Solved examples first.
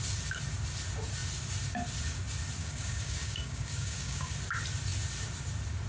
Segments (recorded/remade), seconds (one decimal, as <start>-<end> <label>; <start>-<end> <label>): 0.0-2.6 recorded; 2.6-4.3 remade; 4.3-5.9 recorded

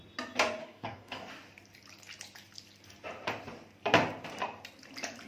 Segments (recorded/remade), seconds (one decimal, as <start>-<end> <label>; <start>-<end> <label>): 0.0-0.6 recorded; 0.6-1.3 remade; 1.3-5.3 recorded

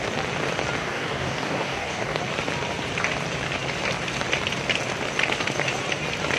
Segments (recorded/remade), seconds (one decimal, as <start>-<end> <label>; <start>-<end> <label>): 0.0-0.8 recorded; 0.8-2.2 remade; 2.2-6.4 recorded

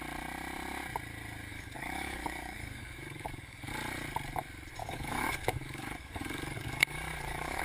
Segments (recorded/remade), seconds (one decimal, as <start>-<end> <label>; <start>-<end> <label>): 0.0-1.5 recorded; 1.5-3.7 remade; 3.7-4.8 recorded; 4.8-7.6 remade

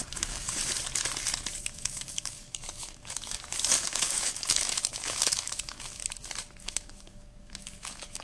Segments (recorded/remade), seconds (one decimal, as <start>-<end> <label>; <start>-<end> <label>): 0.0-0.6 remade; 0.6-1.6 recorded; 1.6-6.0 remade; 6.0-6.6 recorded; 6.6-8.2 remade

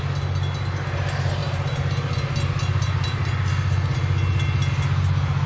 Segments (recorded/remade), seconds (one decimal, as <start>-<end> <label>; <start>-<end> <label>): 0.0-5.5 recorded

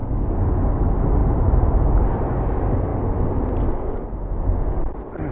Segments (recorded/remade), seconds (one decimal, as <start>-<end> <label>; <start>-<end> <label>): 0.0-0.5 remade; 0.5-5.3 recorded